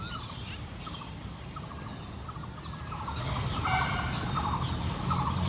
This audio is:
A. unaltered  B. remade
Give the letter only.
A